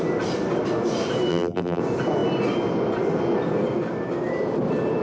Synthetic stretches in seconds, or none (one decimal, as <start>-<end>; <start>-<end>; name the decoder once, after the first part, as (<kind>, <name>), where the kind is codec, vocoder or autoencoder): 1.3-1.8 (vocoder, BigVGAN v2)